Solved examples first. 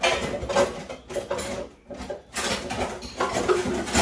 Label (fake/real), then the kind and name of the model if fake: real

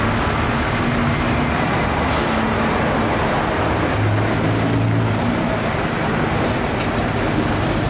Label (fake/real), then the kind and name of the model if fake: real